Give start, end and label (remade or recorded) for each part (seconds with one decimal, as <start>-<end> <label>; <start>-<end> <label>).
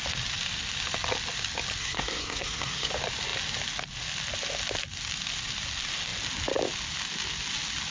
0.0-1.8 recorded; 1.8-2.9 remade; 2.9-7.9 recorded